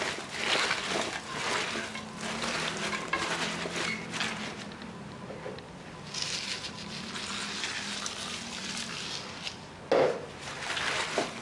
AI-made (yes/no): no